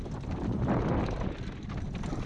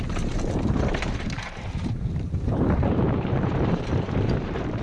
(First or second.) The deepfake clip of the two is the second